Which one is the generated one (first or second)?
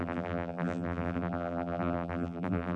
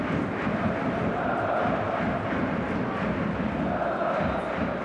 first